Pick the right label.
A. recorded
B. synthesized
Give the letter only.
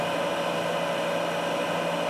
A